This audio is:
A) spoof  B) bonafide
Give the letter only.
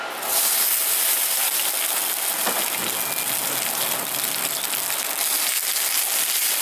B